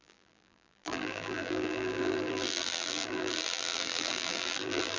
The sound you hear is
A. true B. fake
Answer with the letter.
B